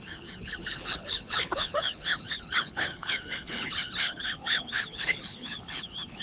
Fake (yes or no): yes